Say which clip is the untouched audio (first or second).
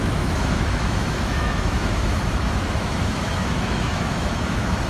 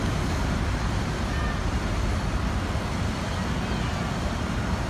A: second